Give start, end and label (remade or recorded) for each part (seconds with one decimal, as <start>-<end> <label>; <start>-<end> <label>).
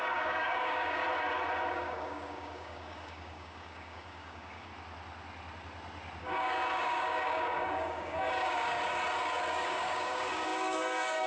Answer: 0.0-1.0 remade; 1.0-1.7 recorded; 1.7-4.7 remade; 4.7-6.2 recorded; 6.2-8.8 remade; 8.8-9.5 recorded; 9.5-11.3 remade